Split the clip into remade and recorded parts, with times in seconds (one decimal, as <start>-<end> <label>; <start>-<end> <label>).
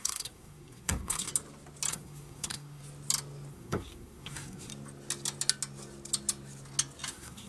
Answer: 0.0-1.3 remade; 1.3-1.9 recorded; 1.9-2.8 remade; 2.8-3.5 recorded; 3.5-4.7 remade; 4.7-7.1 recorded; 7.1-7.5 remade